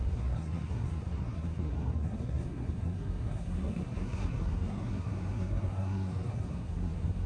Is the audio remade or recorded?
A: remade